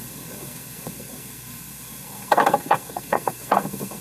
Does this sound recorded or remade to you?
remade